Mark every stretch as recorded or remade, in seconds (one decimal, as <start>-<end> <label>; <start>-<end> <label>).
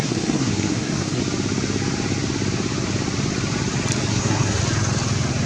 0.0-1.2 remade; 1.2-4.1 recorded; 4.1-4.6 remade; 4.6-5.5 recorded